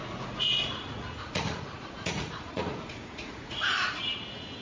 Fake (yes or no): yes